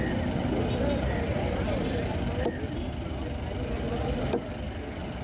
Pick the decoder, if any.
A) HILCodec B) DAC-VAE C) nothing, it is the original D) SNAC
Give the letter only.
C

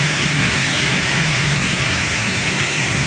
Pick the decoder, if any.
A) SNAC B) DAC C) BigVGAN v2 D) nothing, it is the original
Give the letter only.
A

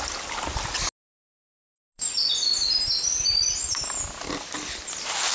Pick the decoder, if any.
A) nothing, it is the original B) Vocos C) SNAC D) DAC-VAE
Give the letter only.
A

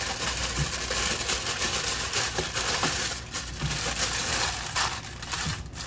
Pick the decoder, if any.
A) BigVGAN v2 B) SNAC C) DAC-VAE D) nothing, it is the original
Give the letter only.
D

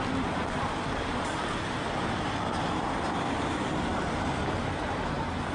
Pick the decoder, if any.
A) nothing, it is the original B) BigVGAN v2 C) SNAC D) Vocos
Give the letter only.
A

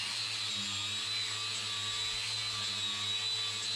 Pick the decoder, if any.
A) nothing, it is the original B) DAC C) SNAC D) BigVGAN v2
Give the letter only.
A